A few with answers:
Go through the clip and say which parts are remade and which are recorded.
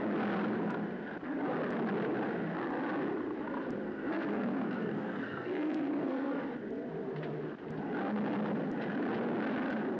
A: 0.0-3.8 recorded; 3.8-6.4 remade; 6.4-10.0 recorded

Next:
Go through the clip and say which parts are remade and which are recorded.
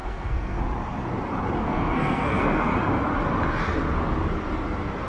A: 0.0-0.6 remade; 0.6-1.6 recorded; 1.6-2.7 remade; 2.7-5.1 recorded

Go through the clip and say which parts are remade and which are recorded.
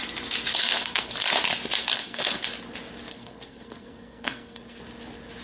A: 0.0-0.5 recorded; 0.5-1.1 remade; 1.1-1.8 recorded; 1.8-2.5 remade; 2.5-3.1 recorded; 3.1-4.8 remade; 4.8-5.4 recorded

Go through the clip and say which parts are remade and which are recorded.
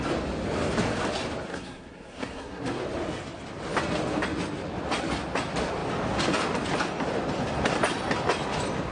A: 0.0-1.5 recorded; 1.5-2.8 remade; 2.8-8.9 recorded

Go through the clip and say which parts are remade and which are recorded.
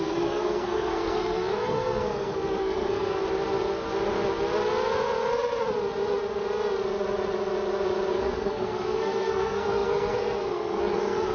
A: 0.0-3.2 remade; 3.2-8.1 recorded; 8.1-11.3 remade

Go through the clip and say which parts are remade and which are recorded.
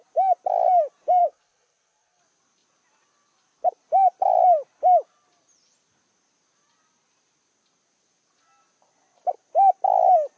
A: 0.0-1.2 recorded; 1.2-2.2 remade; 2.2-10.4 recorded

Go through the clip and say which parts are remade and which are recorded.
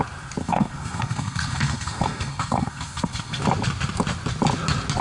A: 0.0-0.4 recorded; 0.4-3.4 remade; 3.4-5.0 recorded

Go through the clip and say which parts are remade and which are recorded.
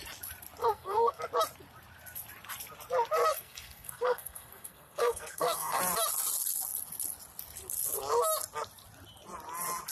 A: 0.0-0.6 recorded; 0.6-1.2 remade; 1.2-3.3 recorded; 3.3-5.8 remade; 5.8-9.9 recorded